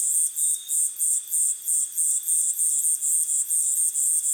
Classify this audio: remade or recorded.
recorded